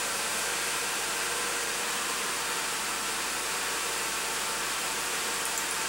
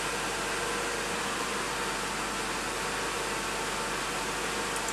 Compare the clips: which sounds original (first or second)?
second